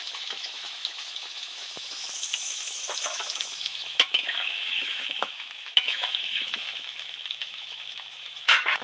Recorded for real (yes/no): no